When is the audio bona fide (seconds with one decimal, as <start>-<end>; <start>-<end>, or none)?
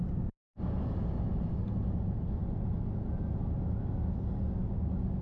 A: 0.0-5.2